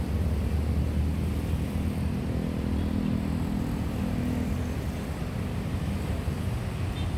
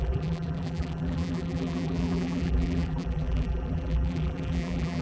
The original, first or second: first